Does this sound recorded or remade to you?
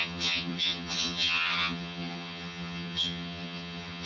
remade